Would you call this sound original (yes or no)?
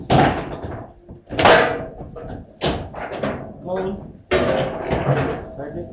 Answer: yes